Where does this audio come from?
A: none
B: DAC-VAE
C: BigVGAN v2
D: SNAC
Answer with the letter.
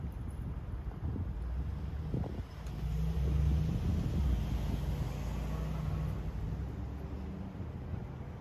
A